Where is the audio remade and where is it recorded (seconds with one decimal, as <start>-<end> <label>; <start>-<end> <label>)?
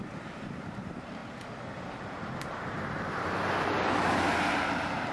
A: 0.0-1.2 remade; 1.2-4.3 recorded; 4.3-5.1 remade